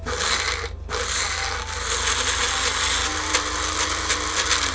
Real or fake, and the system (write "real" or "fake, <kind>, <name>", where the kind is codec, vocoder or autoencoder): real